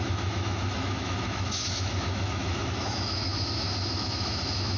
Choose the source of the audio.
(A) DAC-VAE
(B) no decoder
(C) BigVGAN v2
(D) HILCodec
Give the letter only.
A